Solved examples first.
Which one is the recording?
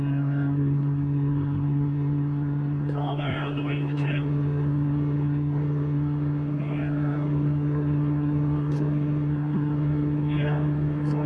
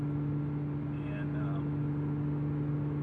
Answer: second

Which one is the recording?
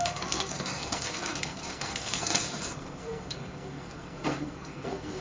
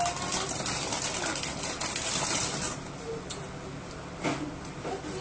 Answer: second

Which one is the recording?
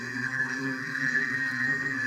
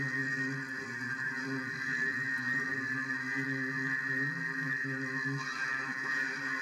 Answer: second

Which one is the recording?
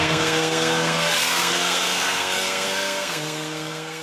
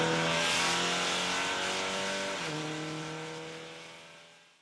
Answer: second